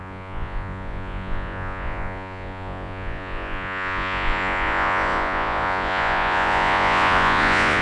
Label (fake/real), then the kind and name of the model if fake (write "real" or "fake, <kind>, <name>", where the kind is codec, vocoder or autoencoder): fake, vocoder, Vocos